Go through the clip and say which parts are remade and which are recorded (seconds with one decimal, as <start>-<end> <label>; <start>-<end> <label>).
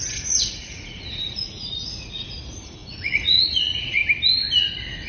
0.0-4.0 remade; 4.0-4.6 recorded; 4.6-5.1 remade